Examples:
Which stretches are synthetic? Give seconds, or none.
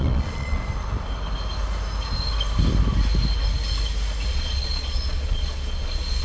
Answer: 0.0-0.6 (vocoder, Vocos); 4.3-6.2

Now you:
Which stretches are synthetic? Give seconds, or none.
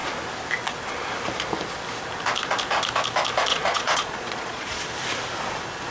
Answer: 3.5-4.8 (vocoder, Vocos)